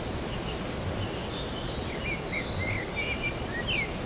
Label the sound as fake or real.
real